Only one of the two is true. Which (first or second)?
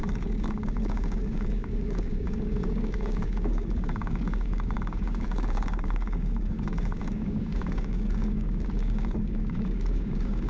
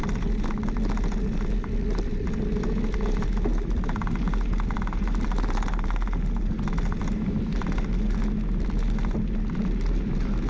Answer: second